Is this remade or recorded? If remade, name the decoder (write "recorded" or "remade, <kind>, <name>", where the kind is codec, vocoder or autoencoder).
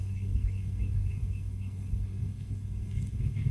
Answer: remade, codec, SNAC